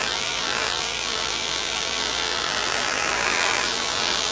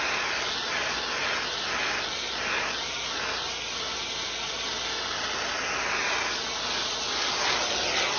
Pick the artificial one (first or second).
first